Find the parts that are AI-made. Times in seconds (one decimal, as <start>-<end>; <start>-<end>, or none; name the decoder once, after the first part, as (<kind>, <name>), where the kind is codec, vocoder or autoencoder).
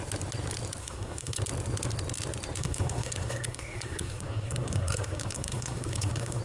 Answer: 0.8-1.4 (codec, SNAC); 2.6-6.4